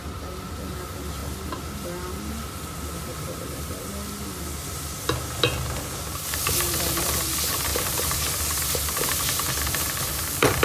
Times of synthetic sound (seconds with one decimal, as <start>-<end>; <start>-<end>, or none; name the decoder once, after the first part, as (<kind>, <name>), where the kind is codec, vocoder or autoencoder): 3.1-3.9 (vocoder, BigVGAN v2); 7.7-8.4